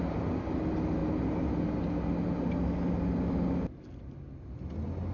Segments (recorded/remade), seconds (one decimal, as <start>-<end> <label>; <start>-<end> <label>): 0.0-5.1 recorded